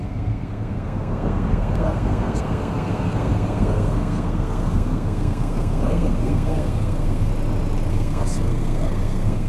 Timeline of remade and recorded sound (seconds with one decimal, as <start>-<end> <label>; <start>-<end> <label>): 0.0-7.3 remade; 7.3-7.9 recorded; 7.9-9.5 remade